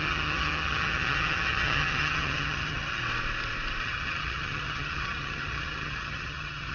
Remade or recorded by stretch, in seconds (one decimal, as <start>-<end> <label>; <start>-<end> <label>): 0.0-3.0 remade; 3.0-3.8 recorded; 3.8-6.7 remade